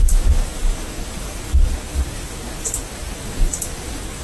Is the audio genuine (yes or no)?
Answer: no